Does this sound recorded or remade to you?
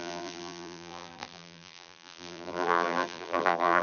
remade